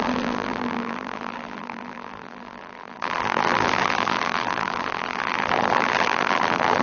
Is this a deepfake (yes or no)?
yes